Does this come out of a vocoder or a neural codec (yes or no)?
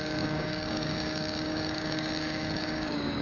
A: yes